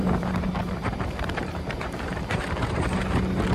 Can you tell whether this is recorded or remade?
remade